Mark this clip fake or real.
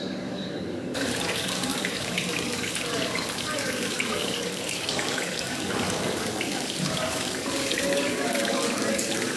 fake